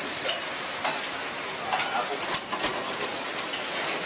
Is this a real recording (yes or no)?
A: yes